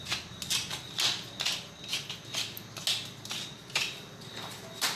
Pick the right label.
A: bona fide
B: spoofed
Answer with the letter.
A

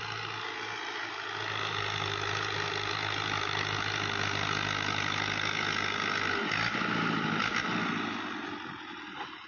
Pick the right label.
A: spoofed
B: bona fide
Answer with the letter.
B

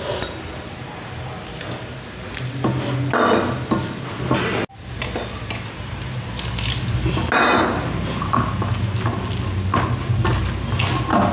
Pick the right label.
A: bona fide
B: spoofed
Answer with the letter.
A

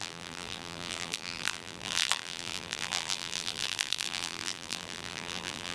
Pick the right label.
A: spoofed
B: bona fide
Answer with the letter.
A